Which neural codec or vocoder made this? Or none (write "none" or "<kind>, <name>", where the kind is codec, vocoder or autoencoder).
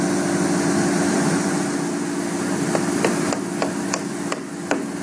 none